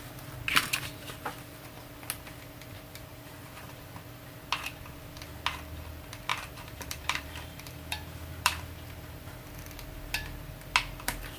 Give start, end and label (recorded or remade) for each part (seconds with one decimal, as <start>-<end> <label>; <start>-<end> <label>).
0.0-3.1 recorded; 3.1-3.9 remade; 3.9-6.3 recorded; 6.3-9.5 remade; 9.5-11.4 recorded